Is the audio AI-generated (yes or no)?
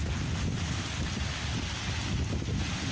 no